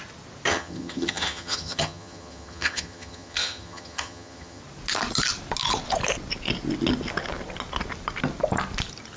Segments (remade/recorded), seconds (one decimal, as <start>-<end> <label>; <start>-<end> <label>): 0.0-0.5 recorded; 0.5-4.6 remade; 4.6-9.2 recorded